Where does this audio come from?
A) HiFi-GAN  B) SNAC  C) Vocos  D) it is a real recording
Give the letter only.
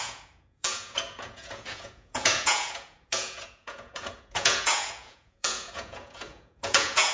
C